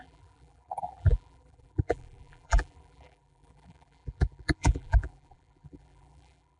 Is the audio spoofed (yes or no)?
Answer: yes